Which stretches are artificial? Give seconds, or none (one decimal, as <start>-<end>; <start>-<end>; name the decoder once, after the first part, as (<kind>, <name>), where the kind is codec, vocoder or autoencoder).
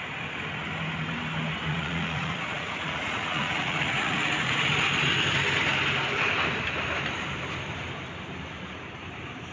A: 1.7-4.7 (vocoder, Vocos)